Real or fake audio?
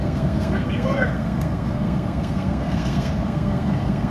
fake